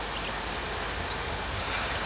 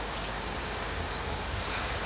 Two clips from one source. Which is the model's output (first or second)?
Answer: second